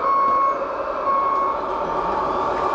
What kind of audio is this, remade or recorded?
recorded